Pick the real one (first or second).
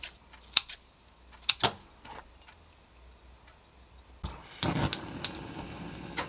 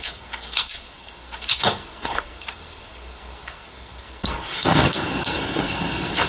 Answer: first